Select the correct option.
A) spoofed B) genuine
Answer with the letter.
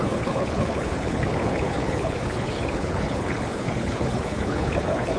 A